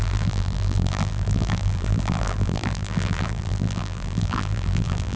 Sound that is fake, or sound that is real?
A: fake